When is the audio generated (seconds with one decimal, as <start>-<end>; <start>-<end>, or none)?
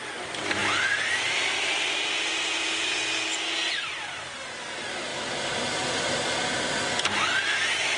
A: none